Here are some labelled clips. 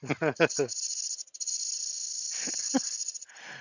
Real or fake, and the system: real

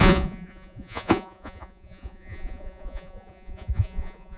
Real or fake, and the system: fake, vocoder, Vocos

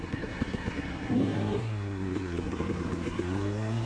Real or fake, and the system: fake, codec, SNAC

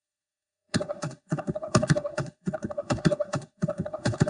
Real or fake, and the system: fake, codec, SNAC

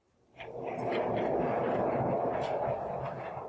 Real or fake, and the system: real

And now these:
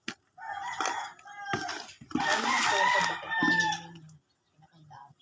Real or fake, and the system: real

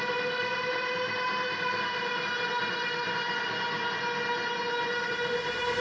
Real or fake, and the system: real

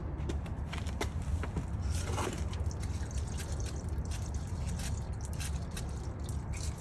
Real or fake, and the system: real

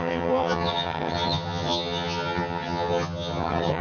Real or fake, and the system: fake, vocoder, HiFi-GAN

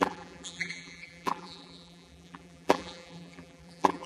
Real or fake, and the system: fake, vocoder, BigVGAN v2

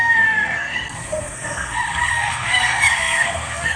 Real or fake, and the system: fake, codec, SNAC